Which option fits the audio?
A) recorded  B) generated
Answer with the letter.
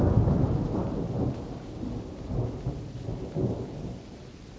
A